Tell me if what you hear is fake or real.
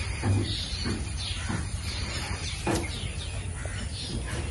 real